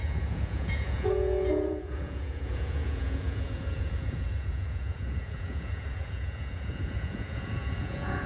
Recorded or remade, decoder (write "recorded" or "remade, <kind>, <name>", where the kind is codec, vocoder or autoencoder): remade, vocoder, Vocos